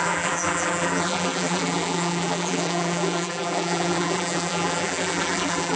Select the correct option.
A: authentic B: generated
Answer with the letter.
B